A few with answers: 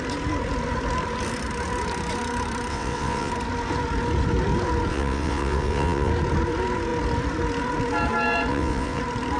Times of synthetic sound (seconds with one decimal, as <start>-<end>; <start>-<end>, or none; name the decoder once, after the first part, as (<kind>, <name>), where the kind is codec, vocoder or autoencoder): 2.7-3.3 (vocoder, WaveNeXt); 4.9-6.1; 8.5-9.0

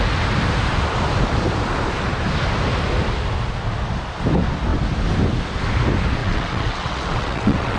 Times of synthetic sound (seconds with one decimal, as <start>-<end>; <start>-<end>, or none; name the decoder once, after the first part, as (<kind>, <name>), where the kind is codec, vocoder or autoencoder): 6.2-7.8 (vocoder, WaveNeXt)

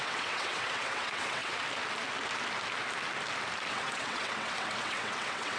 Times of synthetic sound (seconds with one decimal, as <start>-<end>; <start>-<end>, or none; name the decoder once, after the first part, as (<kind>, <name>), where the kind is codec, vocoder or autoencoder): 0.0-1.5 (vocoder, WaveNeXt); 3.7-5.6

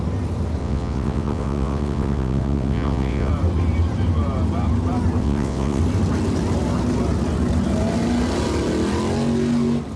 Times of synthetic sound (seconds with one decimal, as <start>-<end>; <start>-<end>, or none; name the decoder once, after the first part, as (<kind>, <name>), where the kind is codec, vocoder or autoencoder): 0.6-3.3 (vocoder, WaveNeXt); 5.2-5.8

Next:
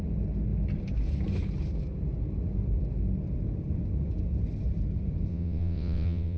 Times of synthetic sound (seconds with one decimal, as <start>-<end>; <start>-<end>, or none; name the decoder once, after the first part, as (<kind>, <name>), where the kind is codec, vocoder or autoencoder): 5.3-6.4 (vocoder, WaveNeXt)